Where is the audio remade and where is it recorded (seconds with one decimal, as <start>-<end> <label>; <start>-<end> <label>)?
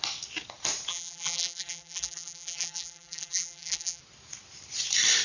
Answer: 0.0-0.9 recorded; 0.9-4.0 remade; 4.0-5.2 recorded